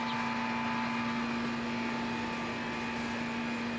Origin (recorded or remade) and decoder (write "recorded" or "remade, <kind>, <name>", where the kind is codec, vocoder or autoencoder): recorded